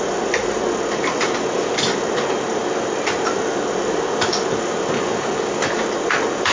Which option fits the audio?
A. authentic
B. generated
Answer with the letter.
A